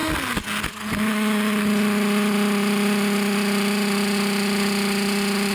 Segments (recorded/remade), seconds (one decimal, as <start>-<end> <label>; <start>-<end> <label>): 0.0-5.5 recorded